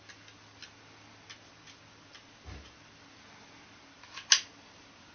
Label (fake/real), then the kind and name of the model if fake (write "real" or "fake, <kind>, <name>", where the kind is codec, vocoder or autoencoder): real